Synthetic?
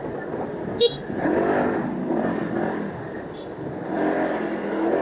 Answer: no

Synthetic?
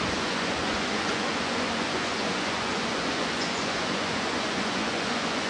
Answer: yes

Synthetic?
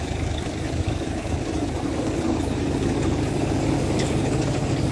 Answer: yes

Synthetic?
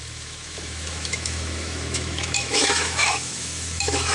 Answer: yes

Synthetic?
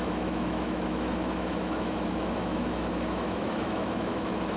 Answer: yes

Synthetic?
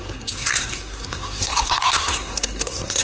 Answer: yes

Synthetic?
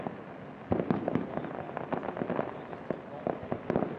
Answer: no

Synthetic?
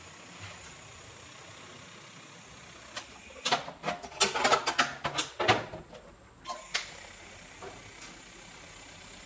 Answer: no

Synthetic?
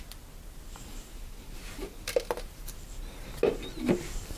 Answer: no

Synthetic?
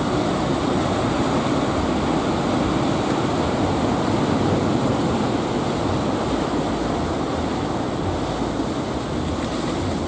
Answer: no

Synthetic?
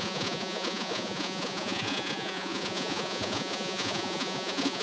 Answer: yes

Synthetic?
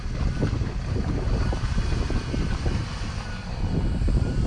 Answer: no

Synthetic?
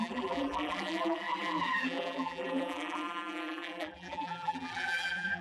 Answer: yes